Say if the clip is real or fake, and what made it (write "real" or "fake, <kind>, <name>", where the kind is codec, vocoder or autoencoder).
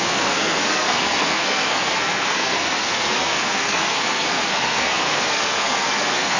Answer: fake, codec, SNAC